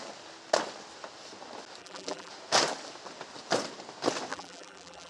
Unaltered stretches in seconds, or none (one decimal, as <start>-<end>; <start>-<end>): 0.0-1.8; 2.3-4.3